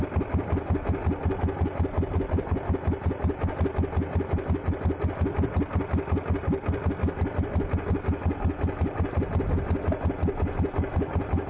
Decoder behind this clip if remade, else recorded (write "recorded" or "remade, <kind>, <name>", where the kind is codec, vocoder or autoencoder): recorded